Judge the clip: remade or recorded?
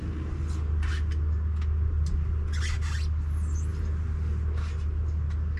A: recorded